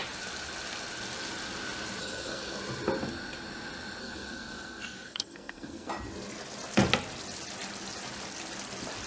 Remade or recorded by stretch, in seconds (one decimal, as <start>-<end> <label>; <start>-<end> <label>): 0.0-2.0 recorded; 2.0-2.6 remade; 2.6-4.0 recorded; 4.0-5.9 remade; 5.9-9.1 recorded